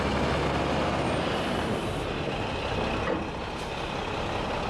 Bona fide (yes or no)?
yes